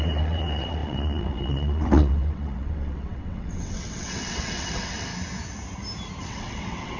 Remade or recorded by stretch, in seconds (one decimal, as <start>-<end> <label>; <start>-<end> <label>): 0.0-5.1 remade; 5.1-6.2 recorded; 6.2-7.0 remade